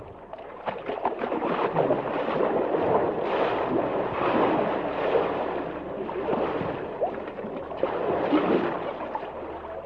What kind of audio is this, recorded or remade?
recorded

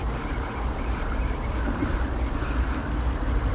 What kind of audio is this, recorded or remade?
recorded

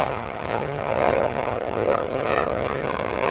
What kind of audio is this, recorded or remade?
remade